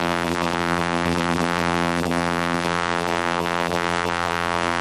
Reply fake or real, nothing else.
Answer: fake